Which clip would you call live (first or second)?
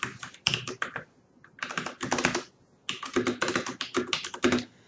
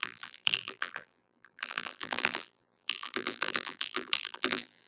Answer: first